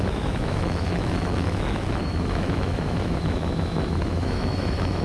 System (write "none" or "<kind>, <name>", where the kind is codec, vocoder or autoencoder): autoencoder, DAC-VAE